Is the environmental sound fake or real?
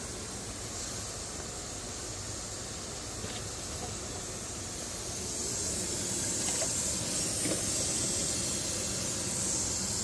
real